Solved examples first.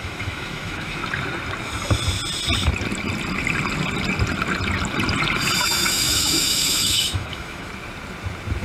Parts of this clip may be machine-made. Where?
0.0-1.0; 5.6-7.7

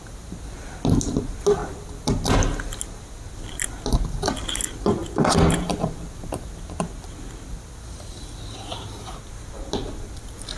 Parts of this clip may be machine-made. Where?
5.0-6.5

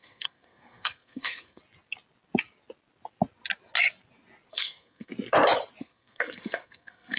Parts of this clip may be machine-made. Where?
0.0-1.6; 4.5-5.1; 5.8-7.2

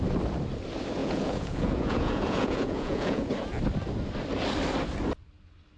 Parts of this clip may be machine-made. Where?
1.0-3.3

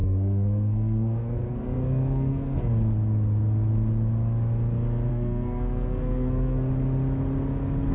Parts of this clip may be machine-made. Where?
0.0-2.6; 5.1-6.7

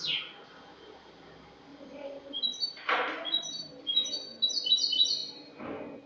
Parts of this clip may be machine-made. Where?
1.7-4.7